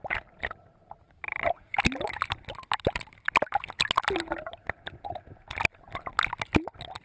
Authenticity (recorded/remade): recorded